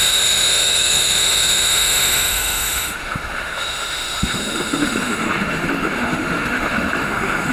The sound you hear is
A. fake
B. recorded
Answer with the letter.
A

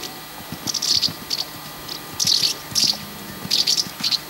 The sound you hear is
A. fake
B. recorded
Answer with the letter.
B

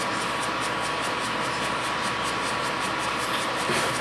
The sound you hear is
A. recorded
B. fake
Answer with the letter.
A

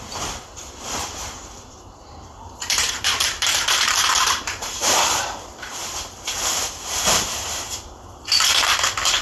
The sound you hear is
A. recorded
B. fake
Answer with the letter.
B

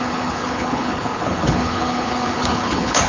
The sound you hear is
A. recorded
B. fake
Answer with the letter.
B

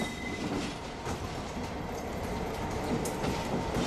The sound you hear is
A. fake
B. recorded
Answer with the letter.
B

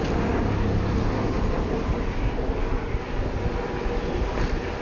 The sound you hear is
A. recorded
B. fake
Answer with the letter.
A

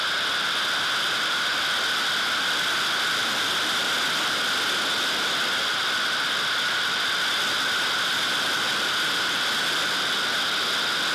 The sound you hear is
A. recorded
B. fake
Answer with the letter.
A